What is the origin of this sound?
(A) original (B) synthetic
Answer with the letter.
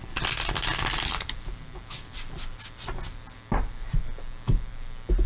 A